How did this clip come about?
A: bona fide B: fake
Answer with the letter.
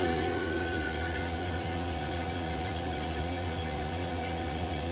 B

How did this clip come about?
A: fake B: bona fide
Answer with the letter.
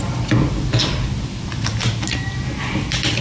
B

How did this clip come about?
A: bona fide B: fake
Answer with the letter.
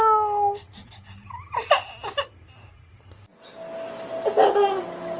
A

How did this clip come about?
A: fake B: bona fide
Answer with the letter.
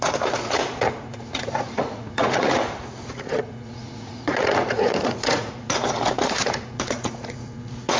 A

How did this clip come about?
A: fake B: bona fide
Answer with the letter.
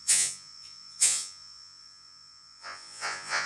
A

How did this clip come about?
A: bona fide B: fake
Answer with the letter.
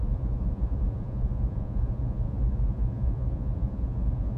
B